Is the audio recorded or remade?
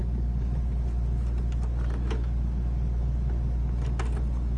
recorded